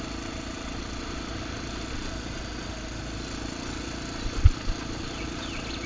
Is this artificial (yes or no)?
no